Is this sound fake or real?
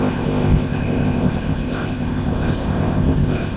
fake